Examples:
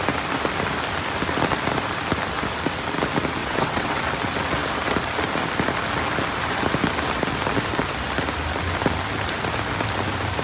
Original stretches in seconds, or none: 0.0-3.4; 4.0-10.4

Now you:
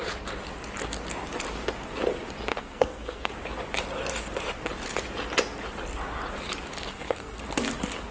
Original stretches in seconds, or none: 0.0-2.5; 3.3-6.9; 7.4-8.1

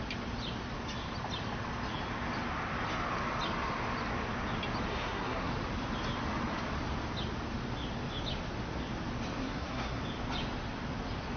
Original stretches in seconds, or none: 0.0-4.9; 5.5-9.4; 10.0-11.4

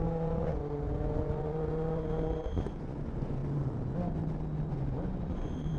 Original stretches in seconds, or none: 3.4-4.7

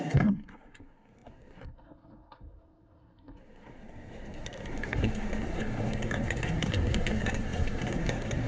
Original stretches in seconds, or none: none

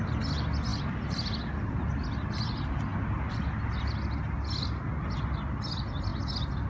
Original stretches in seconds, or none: 0.0-6.7

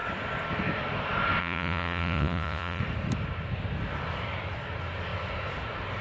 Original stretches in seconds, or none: 0.0-1.4; 2.8-6.0

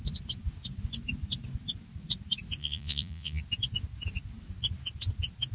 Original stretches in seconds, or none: 0.0-2.6; 3.4-5.5